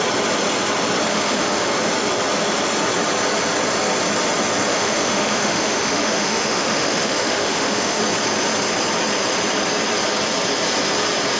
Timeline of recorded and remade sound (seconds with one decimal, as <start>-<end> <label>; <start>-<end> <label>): 0.0-1.1 recorded; 1.1-1.7 remade; 1.7-4.7 recorded; 4.7-8.0 remade; 8.0-11.4 recorded